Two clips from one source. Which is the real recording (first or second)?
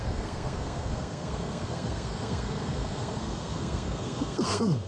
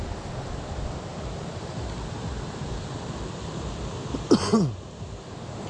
second